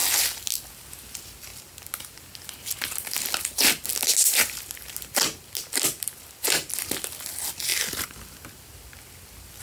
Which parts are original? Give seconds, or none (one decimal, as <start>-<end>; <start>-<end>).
0.0-0.7; 1.5-5.5; 7.7-8.7